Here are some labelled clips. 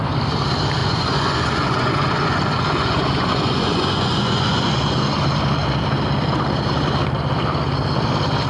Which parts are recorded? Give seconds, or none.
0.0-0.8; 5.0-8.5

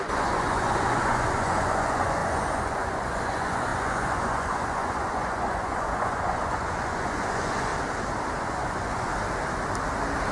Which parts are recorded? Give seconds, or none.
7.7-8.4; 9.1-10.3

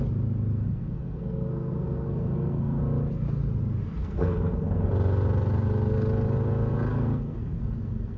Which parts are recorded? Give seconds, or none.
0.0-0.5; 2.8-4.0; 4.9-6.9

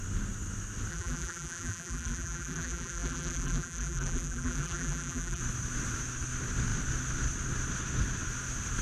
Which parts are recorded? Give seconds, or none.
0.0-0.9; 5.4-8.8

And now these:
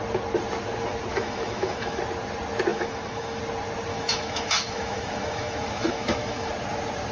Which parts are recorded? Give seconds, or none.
0.0-1.1; 2.0-2.7; 3.4-3.9; 6.5-7.1